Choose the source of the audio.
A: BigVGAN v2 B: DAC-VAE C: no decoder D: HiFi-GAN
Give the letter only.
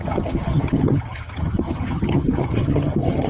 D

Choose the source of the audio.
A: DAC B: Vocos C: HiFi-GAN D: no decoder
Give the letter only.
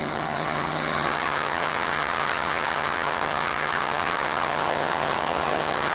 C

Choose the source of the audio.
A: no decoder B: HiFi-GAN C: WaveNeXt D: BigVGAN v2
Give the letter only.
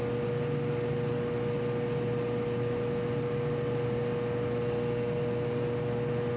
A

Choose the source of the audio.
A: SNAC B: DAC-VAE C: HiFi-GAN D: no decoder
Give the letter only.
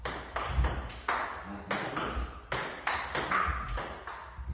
D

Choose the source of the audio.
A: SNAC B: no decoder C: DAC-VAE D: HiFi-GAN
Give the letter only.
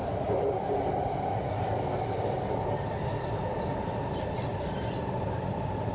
B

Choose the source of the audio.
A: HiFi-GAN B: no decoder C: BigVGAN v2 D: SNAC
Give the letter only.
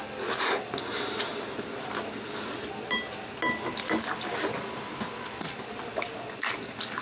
B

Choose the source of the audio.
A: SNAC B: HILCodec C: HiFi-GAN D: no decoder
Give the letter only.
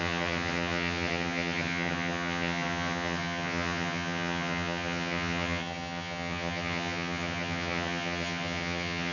C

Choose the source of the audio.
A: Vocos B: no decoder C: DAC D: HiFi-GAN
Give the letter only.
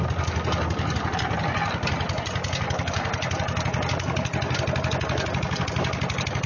B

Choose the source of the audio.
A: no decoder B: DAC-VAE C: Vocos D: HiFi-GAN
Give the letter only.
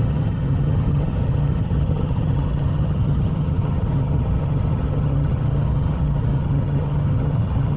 D